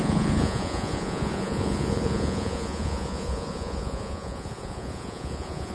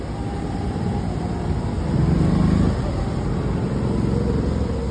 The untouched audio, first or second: second